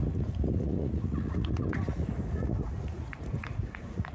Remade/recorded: remade